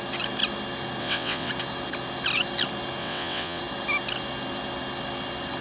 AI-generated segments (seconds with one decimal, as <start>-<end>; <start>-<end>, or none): 1.0-1.5; 3.0-3.6